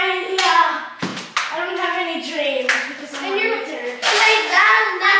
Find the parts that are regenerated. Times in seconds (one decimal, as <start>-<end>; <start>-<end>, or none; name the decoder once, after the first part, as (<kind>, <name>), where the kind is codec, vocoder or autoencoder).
0.0-1.1 (vocoder, Vocos); 4.2-5.2